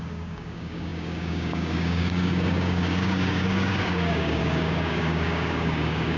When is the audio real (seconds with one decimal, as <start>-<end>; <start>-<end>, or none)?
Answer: none